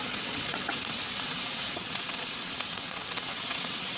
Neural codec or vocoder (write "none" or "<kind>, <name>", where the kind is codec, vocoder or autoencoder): vocoder, WaveNeXt